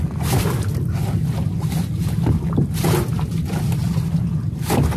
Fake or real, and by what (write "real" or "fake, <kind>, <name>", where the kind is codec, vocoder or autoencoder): real